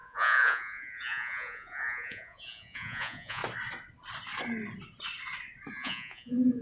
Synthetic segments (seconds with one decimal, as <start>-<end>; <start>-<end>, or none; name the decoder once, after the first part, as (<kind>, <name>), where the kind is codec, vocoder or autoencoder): 0.0-3.4 (vocoder, Vocos); 5.7-6.6